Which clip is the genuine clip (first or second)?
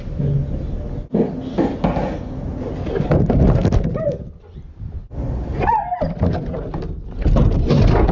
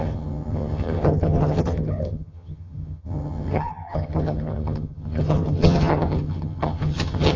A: first